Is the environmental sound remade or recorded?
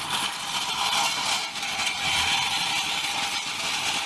recorded